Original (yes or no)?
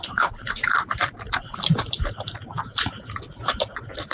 no